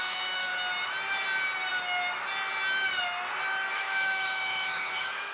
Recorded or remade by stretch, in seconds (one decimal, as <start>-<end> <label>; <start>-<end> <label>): 0.0-0.5 remade; 0.5-3.7 recorded; 3.7-5.3 remade

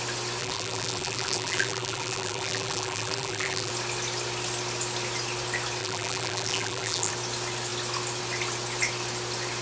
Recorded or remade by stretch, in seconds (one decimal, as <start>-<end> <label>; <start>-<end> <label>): 0.0-0.4 recorded; 0.4-3.7 remade; 3.7-5.8 recorded; 5.8-7.1 remade; 7.1-9.6 recorded

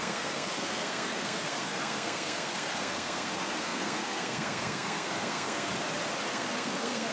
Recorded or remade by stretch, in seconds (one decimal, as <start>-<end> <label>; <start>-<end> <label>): 0.0-5.7 remade; 5.7-6.3 recorded; 6.3-7.1 remade

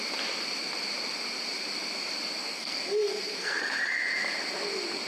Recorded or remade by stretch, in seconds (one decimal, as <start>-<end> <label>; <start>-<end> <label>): 0.0-2.4 recorded; 2.4-3.6 remade; 3.6-5.1 recorded

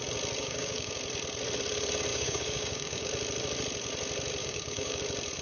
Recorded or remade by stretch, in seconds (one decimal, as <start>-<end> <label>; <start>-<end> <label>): 0.0-0.4 recorded; 0.4-0.9 remade; 0.9-2.1 recorded; 2.1-3.1 remade; 3.1-4.4 recorded; 4.4-5.0 remade; 5.0-5.4 recorded